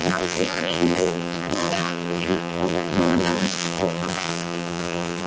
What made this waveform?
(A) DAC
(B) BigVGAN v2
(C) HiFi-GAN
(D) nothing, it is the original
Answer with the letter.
B